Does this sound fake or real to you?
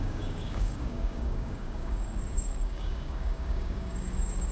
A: fake